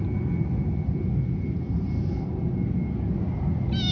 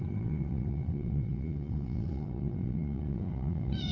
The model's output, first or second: second